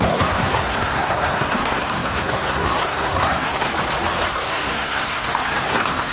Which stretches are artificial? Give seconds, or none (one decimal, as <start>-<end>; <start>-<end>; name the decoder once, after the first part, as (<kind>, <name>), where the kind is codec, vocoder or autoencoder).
0.0-3.7 (codec, SNAC); 4.3-6.1